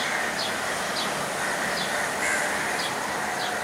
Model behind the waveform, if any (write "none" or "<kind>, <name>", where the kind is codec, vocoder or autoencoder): none